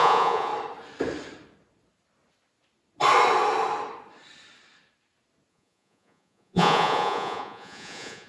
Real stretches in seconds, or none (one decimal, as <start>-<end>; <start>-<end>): 0.5-5.5